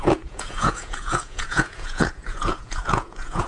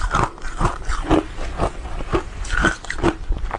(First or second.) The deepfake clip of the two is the first